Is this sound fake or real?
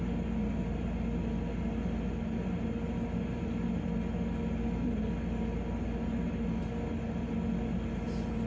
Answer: real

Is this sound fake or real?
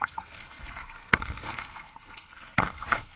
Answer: fake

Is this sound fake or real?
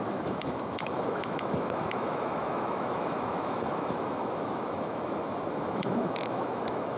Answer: fake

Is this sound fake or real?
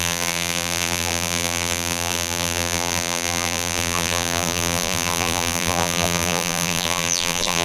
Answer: fake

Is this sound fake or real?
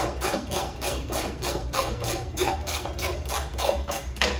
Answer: fake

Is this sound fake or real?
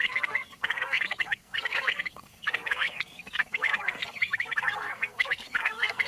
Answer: fake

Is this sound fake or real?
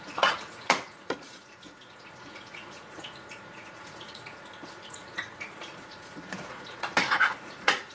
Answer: fake